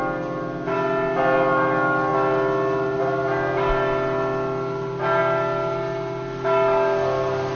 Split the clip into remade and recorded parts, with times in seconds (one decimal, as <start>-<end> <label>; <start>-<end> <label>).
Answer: 0.0-7.6 recorded